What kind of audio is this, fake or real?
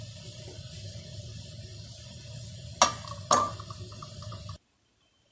real